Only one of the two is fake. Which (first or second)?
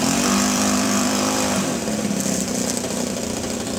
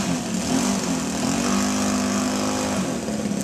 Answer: first